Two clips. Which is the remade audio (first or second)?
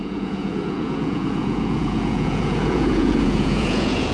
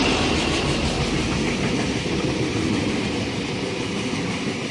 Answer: first